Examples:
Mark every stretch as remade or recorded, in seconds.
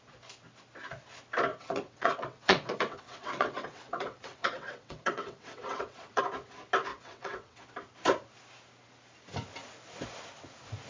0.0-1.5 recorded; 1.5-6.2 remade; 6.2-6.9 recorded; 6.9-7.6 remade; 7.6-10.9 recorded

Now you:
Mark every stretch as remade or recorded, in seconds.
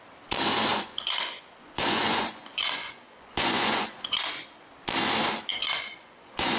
0.0-0.7 recorded; 0.7-4.7 remade; 4.7-5.5 recorded; 5.5-6.6 remade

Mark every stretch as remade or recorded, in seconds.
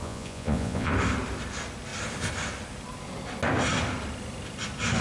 0.0-0.9 remade; 0.9-5.0 recorded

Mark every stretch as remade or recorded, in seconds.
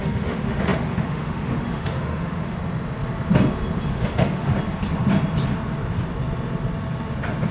0.0-2.6 remade; 2.6-3.9 recorded; 3.9-4.5 remade; 4.5-7.5 recorded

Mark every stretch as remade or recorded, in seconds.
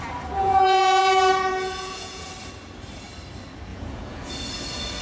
0.0-0.4 recorded; 0.4-1.0 remade; 1.0-1.5 recorded; 1.5-2.3 remade; 2.3-3.7 recorded; 3.7-4.3 remade; 4.3-5.0 recorded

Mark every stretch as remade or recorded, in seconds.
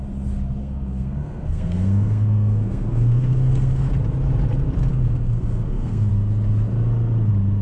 0.0-0.6 recorded; 0.6-3.9 remade; 3.9-4.9 recorded; 4.9-6.1 remade; 6.1-7.6 recorded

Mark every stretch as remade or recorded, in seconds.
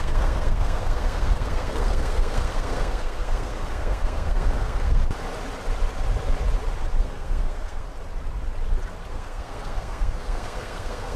0.0-5.0 remade; 5.0-7.0 recorded; 7.0-7.9 remade; 7.9-9.1 recorded; 9.1-11.2 remade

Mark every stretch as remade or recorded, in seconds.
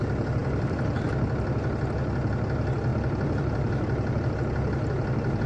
0.0-0.4 recorded; 0.4-1.0 remade; 1.0-2.9 recorded; 2.9-4.3 remade; 4.3-5.5 recorded